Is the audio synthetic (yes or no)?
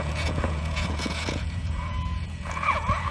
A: yes